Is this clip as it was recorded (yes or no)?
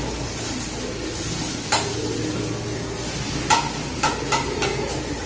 yes